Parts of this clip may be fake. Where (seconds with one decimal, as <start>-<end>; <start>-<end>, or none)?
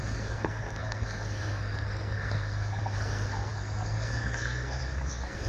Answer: 0.0-5.5